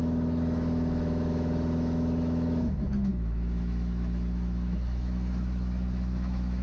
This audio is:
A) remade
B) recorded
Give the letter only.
A